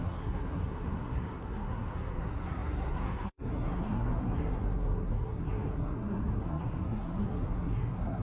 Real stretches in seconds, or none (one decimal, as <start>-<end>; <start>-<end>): none